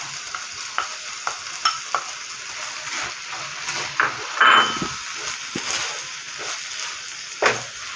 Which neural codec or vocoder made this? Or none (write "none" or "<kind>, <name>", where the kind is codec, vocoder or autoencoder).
none